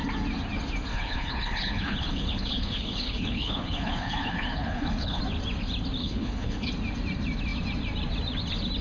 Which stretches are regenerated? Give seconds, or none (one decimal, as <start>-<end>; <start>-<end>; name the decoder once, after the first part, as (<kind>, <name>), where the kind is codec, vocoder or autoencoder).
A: 0.9-5.2 (codec, HILCodec); 6.0-6.7